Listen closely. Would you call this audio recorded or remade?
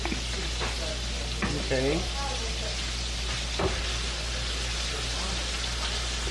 recorded